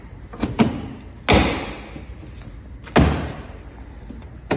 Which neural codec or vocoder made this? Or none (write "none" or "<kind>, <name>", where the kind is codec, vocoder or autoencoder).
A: none